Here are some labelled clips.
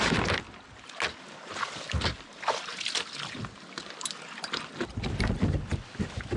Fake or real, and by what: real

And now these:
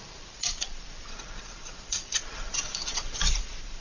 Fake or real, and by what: fake, vocoder, Vocos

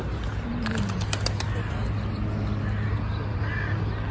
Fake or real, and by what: real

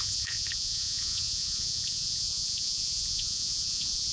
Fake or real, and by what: fake, vocoder, Vocos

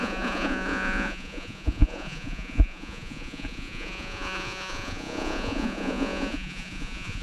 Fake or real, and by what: fake, vocoder, Vocos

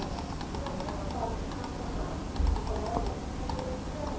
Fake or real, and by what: real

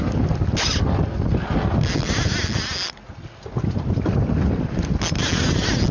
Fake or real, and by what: real